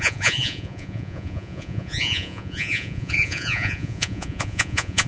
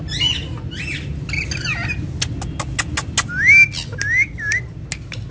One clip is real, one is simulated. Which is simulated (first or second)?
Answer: first